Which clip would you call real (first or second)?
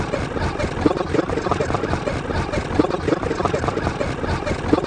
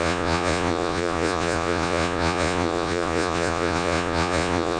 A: first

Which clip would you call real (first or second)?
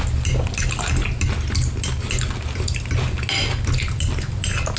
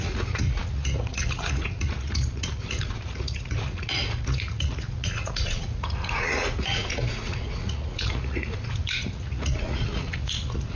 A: first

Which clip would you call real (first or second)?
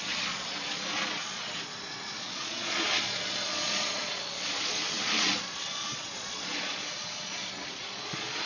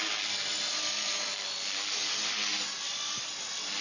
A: second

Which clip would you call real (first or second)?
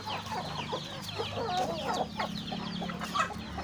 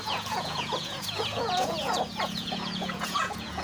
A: first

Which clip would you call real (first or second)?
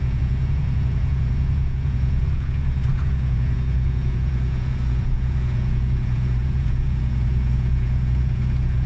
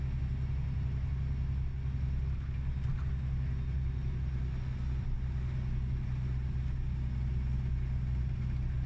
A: second